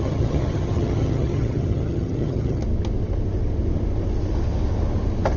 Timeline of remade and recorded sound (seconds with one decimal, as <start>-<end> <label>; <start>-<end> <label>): 0.0-2.6 remade; 2.6-5.4 recorded